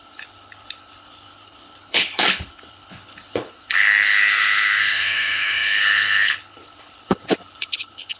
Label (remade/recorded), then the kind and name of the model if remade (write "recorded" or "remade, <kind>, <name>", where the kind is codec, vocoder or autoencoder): remade, codec, HILCodec